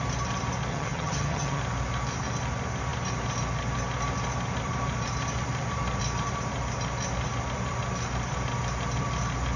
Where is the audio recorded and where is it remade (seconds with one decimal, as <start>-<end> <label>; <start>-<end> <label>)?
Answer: 0.0-0.7 recorded; 0.7-1.6 remade; 1.6-9.6 recorded